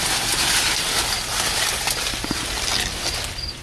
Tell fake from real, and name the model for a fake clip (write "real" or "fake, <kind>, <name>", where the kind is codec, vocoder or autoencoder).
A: real